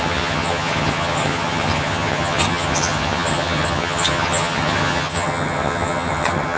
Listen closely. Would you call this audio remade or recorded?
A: remade